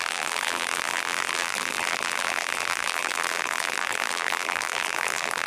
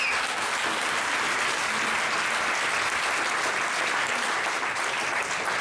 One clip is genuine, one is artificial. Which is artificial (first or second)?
first